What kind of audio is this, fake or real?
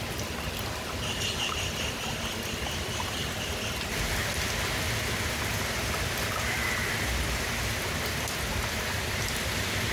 real